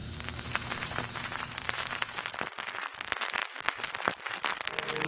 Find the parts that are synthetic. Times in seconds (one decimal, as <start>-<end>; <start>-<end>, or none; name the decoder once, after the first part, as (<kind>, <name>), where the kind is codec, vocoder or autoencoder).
0.0-2.2 (vocoder, BigVGAN v2)